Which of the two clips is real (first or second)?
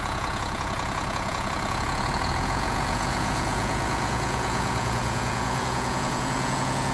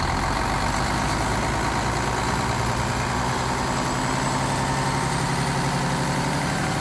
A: second